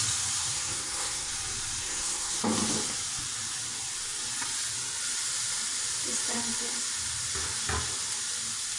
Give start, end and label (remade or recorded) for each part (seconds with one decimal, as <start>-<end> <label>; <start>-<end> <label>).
0.0-0.4 recorded; 0.4-1.3 remade; 1.3-1.8 recorded; 1.8-2.4 remade; 2.4-8.8 recorded